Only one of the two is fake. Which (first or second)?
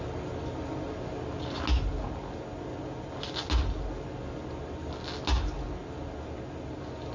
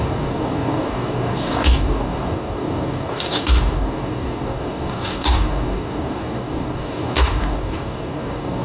second